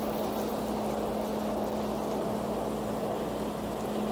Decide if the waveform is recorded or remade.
recorded